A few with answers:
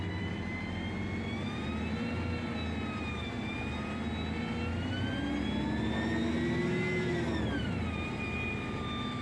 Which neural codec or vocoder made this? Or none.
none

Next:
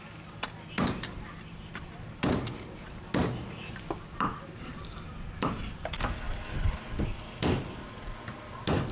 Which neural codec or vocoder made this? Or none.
none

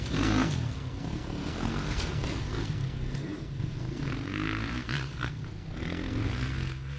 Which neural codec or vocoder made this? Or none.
codec, SNAC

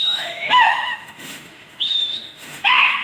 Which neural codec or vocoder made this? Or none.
autoencoder, DAC-VAE